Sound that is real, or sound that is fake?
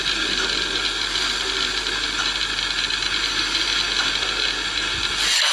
real